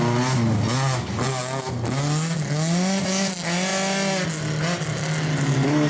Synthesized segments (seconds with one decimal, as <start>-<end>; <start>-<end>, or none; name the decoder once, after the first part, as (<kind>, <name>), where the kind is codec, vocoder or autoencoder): none

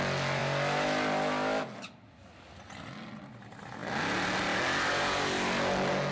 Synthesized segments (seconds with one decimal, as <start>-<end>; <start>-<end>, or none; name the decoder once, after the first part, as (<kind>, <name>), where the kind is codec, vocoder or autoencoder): none